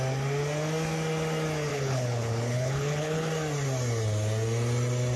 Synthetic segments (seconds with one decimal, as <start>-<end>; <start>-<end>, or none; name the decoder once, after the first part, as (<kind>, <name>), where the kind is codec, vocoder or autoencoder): 1.7-3.3 (codec, HILCodec)